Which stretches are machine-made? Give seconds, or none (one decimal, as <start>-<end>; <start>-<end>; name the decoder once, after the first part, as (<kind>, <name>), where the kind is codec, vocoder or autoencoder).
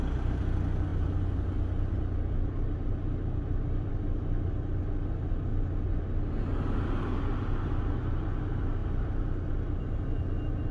none